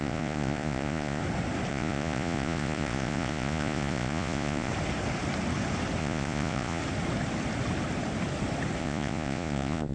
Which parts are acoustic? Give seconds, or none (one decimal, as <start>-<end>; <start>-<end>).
1.2-1.7; 4.7-6.0; 6.8-8.8